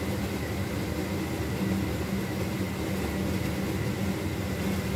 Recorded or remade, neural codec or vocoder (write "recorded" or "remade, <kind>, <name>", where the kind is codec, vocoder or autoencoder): recorded